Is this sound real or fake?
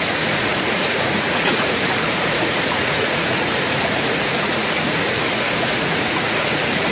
fake